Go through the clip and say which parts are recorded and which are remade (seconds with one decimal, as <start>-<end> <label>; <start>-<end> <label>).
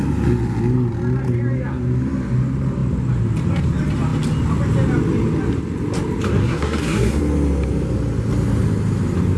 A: 0.0-6.4 recorded; 6.4-7.2 remade; 7.2-9.4 recorded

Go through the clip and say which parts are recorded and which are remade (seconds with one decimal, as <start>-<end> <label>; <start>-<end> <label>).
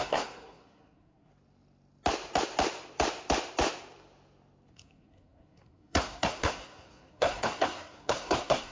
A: 0.0-1.3 remade; 1.3-4.7 recorded; 4.7-8.7 remade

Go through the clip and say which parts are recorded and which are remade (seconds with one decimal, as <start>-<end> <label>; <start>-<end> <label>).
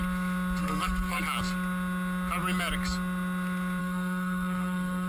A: 0.0-0.6 recorded; 0.6-1.2 remade; 1.2-3.8 recorded; 3.8-5.1 remade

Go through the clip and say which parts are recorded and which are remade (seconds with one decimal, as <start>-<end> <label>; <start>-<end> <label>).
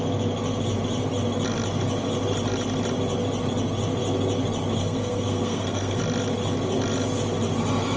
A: 0.0-4.8 recorded; 4.8-6.0 remade; 6.0-8.0 recorded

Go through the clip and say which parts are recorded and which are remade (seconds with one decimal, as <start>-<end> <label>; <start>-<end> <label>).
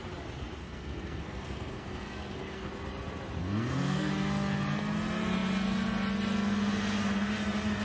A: 0.0-0.6 recorded; 0.6-2.7 remade; 2.7-3.4 recorded; 3.4-4.1 remade; 4.1-7.8 recorded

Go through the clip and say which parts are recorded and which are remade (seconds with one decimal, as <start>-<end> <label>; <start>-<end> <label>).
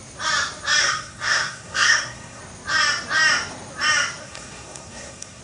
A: 0.0-0.8 recorded; 0.8-2.4 remade; 2.4-4.2 recorded; 4.2-5.4 remade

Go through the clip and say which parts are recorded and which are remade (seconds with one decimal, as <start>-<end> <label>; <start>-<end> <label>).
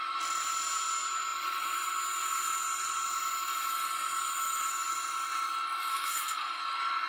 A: 0.0-5.9 recorded; 5.9-6.6 remade; 6.6-7.1 recorded